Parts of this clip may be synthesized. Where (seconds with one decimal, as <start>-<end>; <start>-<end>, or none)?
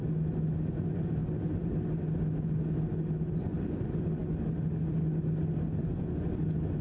none